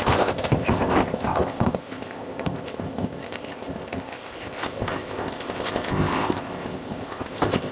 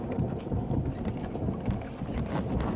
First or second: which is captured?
second